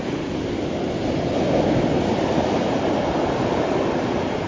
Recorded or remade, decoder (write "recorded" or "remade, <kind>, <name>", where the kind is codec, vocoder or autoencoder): recorded